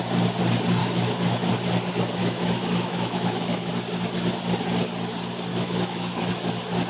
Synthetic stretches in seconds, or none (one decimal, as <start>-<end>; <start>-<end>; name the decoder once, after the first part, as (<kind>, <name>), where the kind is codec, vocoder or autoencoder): 0.8-1.5 (autoencoder, DAC-VAE); 2.2-3.7; 5.5-6.3